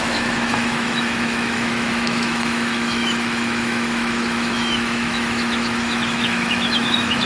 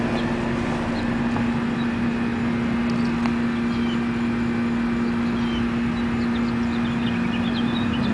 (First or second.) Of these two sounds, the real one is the second